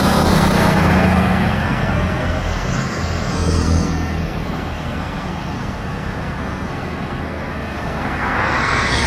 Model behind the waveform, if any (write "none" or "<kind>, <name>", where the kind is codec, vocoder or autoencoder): codec, SNAC